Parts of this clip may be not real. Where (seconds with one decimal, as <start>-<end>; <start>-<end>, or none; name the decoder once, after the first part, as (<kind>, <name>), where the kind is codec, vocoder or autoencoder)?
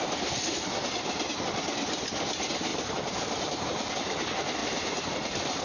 2.7-3.9 (vocoder, BigVGAN v2); 4.6-5.6